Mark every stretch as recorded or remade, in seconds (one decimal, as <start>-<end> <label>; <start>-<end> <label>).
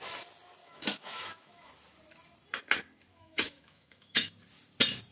0.0-0.6 recorded; 0.6-1.7 remade; 1.7-3.1 recorded; 3.1-4.3 remade; 4.3-5.1 recorded